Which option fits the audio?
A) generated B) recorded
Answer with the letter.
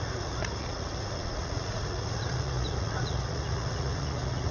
A